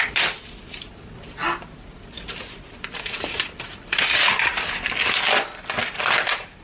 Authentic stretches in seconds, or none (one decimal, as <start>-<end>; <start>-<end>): 0.0-6.6